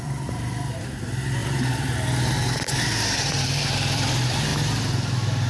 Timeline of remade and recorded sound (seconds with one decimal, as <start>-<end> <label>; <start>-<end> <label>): 0.0-1.4 remade; 1.4-2.7 recorded; 2.7-4.5 remade; 4.5-5.5 recorded